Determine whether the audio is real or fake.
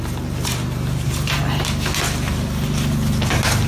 real